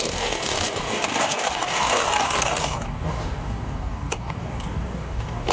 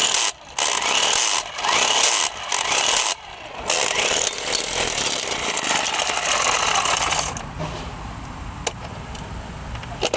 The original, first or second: second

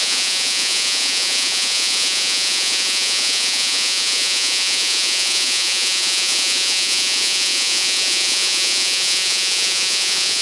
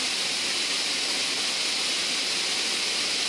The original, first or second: second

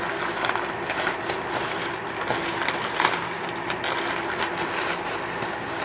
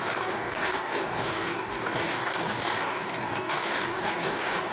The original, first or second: first